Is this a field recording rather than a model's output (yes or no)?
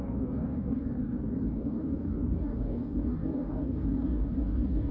no